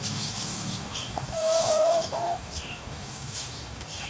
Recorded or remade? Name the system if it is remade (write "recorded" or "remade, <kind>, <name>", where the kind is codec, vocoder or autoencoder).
remade, codec, DAC